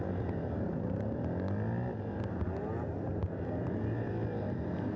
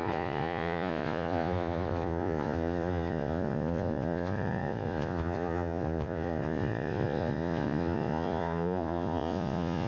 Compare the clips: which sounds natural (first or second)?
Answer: first